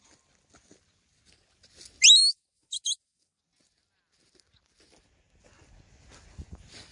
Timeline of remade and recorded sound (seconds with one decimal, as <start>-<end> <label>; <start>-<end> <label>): 0.0-2.2 recorded; 2.2-3.4 remade; 3.4-6.9 recorded